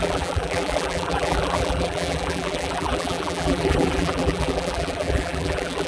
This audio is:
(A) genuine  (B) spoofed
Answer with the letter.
B